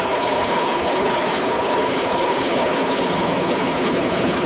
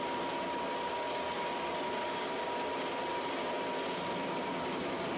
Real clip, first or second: second